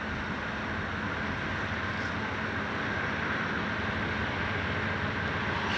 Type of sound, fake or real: real